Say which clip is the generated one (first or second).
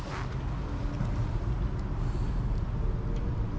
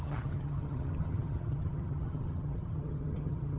second